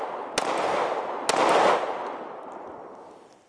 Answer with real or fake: real